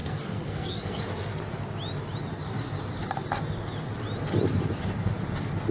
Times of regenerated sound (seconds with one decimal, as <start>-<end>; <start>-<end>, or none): 0.0-1.0